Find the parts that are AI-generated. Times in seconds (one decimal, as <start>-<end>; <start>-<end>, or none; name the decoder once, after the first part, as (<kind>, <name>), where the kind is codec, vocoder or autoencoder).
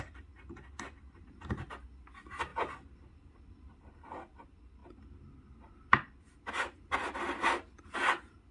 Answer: none